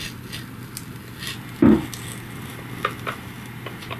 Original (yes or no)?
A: yes